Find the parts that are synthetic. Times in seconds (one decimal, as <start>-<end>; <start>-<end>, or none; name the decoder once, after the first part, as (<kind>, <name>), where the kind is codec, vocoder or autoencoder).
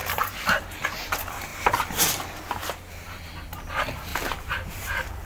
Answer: 0.0-0.6 (vocoder, BigVGAN v2); 1.5-3.3; 4.1-5.3